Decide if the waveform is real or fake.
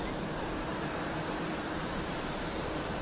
fake